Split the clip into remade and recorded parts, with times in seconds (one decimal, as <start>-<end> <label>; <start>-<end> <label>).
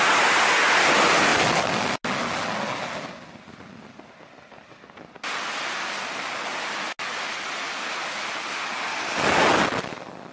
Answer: 0.0-10.3 recorded